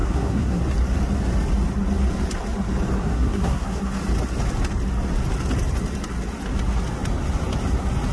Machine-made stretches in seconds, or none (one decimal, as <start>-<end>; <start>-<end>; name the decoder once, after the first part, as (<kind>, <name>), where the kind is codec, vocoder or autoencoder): 0.0-0.6 (codec, SNAC); 3.0-3.8